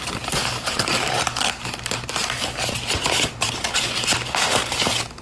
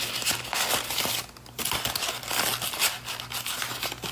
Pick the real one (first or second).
second